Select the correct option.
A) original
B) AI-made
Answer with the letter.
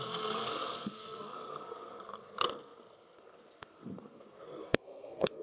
B